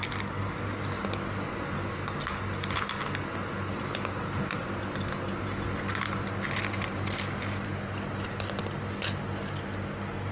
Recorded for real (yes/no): yes